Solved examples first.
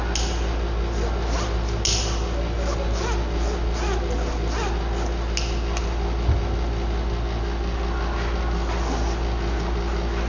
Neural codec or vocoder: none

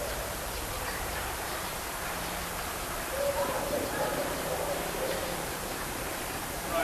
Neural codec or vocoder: vocoder, BigVGAN v2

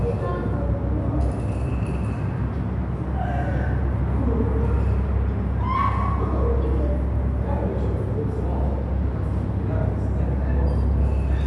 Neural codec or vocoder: none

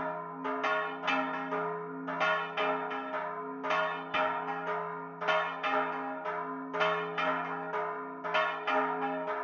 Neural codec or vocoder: none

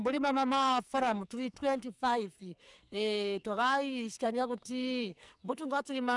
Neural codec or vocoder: codec, SNAC